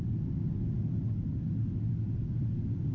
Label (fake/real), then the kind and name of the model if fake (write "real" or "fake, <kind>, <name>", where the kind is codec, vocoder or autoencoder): real